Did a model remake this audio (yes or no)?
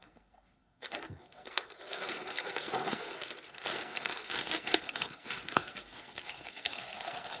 yes